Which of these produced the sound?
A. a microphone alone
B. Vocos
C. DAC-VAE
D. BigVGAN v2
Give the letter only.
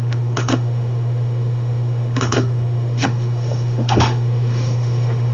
C